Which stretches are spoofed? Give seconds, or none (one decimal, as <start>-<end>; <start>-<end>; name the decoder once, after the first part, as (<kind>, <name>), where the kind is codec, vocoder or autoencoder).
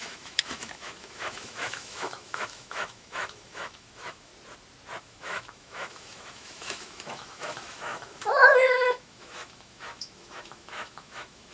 0.0-4.3 (autoencoder, DAC-VAE); 5.0-11.5